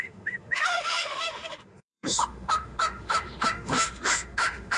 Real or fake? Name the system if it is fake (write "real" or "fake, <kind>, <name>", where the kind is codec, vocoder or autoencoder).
fake, autoencoder, DAC-VAE